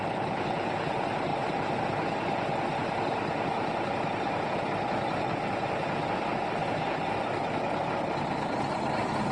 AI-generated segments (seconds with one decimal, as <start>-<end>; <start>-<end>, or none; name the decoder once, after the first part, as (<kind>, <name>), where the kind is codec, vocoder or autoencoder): none